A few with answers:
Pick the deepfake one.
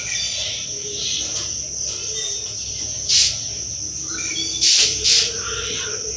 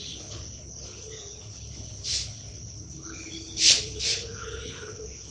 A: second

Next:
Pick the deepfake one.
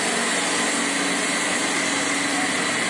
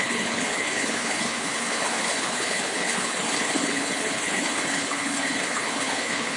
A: second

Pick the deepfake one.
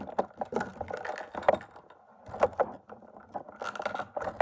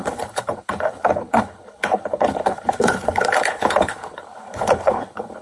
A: second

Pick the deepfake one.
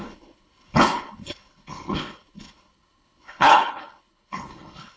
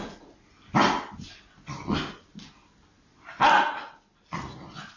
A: first